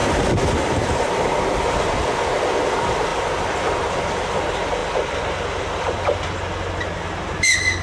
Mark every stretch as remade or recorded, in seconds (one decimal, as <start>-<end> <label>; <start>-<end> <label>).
0.0-2.1 remade; 2.1-3.1 recorded; 3.1-3.6 remade; 3.6-4.8 recorded; 4.8-6.2 remade; 6.2-7.8 recorded